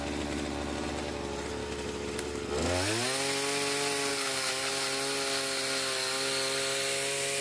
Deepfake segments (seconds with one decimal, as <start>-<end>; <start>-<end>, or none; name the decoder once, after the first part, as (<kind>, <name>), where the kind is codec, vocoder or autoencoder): 4.1-4.7 (codec, DAC)